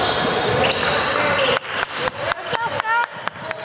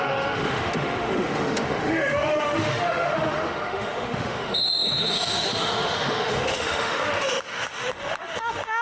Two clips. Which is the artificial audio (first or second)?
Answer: second